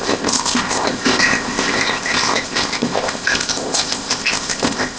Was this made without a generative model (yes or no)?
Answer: no